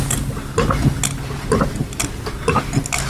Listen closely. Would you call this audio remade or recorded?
recorded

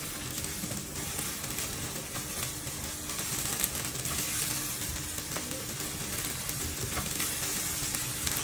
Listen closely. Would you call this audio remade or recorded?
recorded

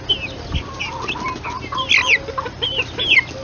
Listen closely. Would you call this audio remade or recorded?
recorded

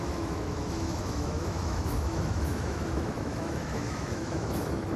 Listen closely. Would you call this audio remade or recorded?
remade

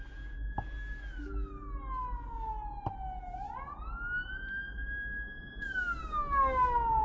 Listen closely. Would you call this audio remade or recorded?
recorded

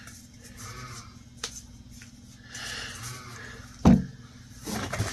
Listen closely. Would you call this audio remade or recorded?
recorded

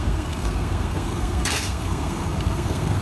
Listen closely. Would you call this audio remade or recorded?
remade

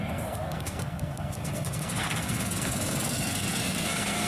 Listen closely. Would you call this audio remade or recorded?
remade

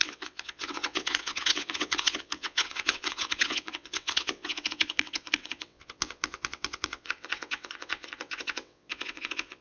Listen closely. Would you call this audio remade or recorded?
remade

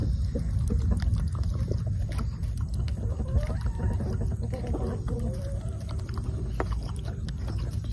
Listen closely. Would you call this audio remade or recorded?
recorded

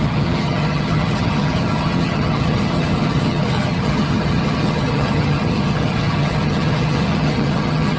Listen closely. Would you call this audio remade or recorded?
remade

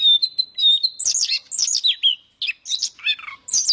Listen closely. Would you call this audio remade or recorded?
recorded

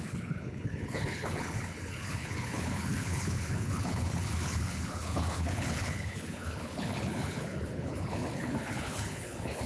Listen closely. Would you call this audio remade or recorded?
remade